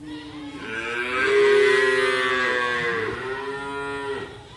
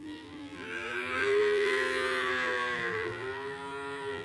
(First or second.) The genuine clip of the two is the first